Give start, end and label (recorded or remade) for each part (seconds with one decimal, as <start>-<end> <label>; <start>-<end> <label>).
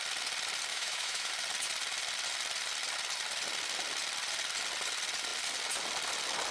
0.0-0.7 recorded; 0.7-1.3 remade; 1.3-6.5 recorded